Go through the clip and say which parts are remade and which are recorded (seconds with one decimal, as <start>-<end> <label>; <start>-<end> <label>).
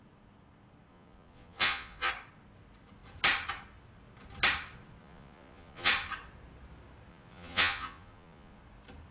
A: 0.0-0.9 recorded; 0.9-2.1 remade; 2.1-5.0 recorded; 5.0-5.9 remade; 5.9-7.1 recorded; 7.1-8.6 remade; 8.6-9.1 recorded